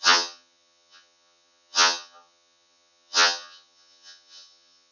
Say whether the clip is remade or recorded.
remade